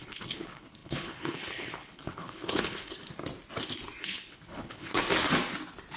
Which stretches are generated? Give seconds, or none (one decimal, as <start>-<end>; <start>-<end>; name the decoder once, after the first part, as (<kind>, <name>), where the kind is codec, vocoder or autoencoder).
0.0-3.0 (codec, HILCodec); 4.0-4.9